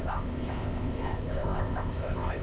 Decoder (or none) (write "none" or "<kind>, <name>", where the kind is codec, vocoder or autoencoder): codec, ZipCodec